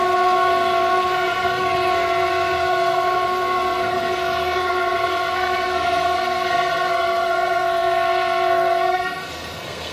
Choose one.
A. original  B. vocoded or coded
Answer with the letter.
B